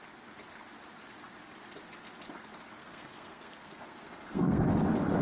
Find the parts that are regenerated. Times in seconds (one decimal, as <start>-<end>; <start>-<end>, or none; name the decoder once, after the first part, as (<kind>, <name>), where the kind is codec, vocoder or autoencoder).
2.8-4.7 (codec, SNAC)